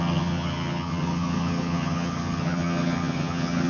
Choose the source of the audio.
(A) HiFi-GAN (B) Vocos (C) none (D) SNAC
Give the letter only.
A